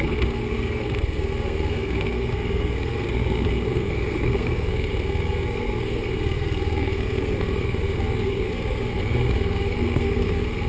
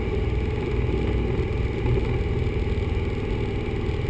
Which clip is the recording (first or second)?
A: second